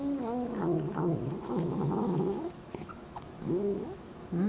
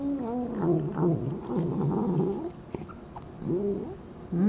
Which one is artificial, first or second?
first